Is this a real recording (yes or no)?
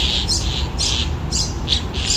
yes